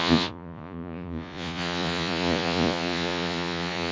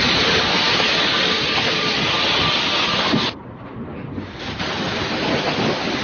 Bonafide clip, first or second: second